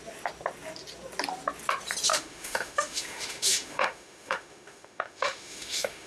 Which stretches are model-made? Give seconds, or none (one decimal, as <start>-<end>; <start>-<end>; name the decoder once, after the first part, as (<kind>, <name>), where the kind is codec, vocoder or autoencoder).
2.1-6.1 (autoencoder, DAC-VAE)